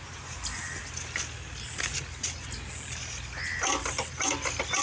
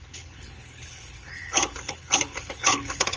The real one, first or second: first